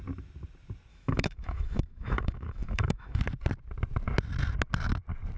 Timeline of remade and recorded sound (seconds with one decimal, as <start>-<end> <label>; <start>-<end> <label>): 0.0-0.9 recorded; 0.9-3.2 remade; 3.2-5.4 recorded